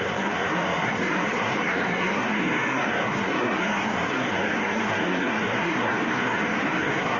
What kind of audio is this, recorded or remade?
remade